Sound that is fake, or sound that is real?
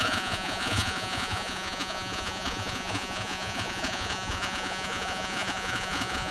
fake